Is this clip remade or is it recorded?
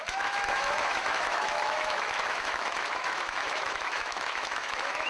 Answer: remade